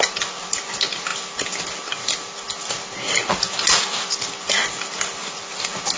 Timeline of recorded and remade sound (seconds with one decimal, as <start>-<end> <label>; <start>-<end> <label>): 0.0-6.0 recorded